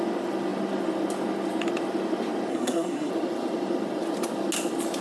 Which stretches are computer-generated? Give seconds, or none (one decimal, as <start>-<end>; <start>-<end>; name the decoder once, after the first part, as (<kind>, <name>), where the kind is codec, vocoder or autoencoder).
2.5-3.1 (codec, SNAC)